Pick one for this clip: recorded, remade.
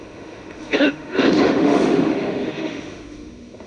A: remade